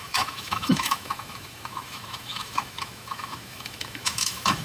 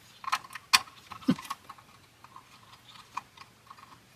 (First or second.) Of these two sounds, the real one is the second